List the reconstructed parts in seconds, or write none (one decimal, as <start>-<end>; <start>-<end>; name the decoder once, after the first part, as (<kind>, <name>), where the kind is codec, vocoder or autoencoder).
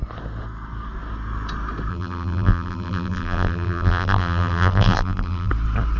1.9-5.5 (vocoder, BigVGAN v2)